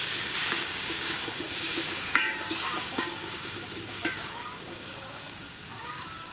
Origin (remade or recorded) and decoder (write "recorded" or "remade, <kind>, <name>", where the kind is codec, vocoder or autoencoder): remade, codec, DAC